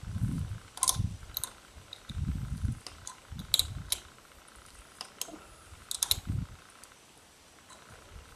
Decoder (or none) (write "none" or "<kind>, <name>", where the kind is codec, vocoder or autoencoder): none